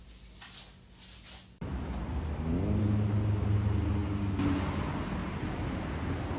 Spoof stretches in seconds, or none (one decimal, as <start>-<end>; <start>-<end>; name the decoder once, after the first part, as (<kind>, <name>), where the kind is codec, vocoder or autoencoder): 5.2-5.9 (vocoder, BigVGAN v2)